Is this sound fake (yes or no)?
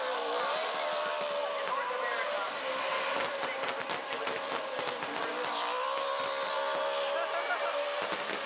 no